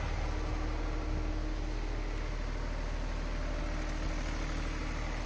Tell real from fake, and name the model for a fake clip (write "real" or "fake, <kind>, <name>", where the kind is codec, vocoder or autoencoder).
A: real